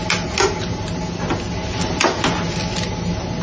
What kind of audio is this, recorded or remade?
recorded